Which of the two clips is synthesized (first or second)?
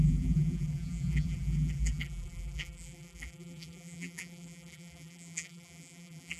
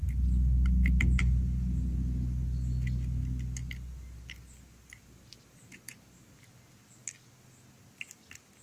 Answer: first